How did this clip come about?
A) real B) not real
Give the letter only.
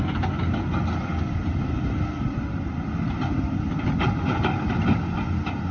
A